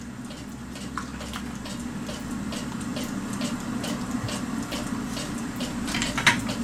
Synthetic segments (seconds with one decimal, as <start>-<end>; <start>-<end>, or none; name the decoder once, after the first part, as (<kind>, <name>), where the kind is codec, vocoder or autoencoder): none